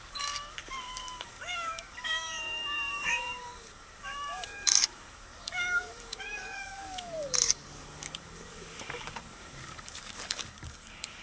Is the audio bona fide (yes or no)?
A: no